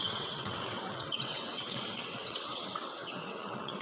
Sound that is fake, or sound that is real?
fake